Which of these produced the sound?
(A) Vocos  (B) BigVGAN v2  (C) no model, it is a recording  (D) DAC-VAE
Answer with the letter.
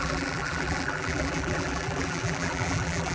B